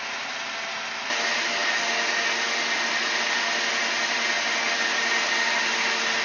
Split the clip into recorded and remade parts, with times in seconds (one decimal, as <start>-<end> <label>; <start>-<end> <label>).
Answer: 0.0-6.2 recorded